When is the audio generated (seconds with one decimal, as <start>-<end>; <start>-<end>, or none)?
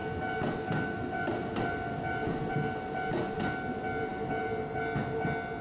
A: 0.0-3.4